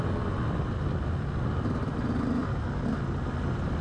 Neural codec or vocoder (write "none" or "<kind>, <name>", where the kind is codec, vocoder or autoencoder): none